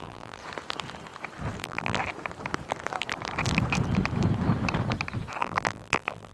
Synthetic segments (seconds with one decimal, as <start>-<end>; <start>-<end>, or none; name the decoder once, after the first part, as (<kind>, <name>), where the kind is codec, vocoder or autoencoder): 0.0-0.4 (vocoder, BigVGAN v2); 1.6-2.0; 5.4-6.3